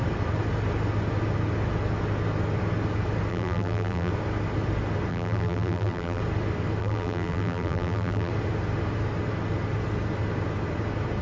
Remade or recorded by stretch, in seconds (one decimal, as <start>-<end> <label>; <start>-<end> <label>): 0.0-3.3 recorded; 3.3-4.1 remade; 4.1-5.1 recorded; 5.1-6.2 remade; 6.2-6.8 recorded; 6.8-8.3 remade; 8.3-11.2 recorded